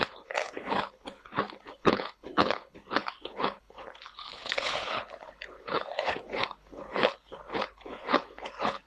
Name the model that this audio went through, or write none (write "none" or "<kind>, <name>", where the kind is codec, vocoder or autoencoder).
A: codec, HILCodec